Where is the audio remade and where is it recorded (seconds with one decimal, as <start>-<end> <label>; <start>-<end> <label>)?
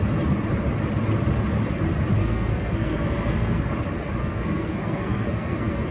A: 0.0-2.2 recorded; 2.2-3.6 remade; 3.6-4.2 recorded; 4.2-5.9 remade